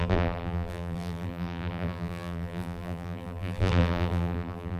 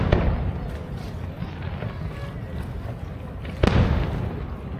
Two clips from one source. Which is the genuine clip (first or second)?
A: second